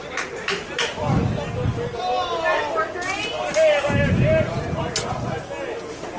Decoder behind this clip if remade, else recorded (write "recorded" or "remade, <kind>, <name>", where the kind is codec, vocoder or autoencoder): recorded